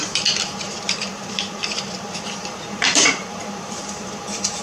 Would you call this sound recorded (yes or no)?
no